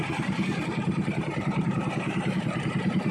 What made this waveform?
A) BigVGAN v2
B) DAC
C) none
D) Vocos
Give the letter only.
A